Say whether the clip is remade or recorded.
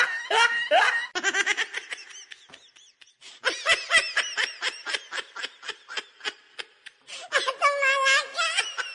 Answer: recorded